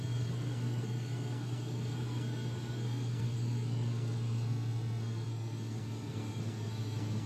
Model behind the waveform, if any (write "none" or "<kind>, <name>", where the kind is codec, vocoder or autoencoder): codec, SNAC